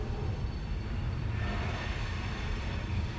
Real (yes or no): yes